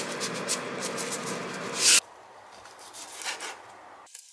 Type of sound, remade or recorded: recorded